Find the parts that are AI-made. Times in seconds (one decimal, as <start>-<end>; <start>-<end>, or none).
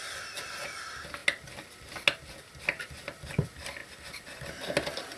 none